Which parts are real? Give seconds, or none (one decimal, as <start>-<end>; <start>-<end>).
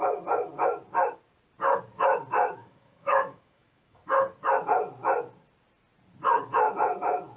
0.0-2.6; 4.0-7.4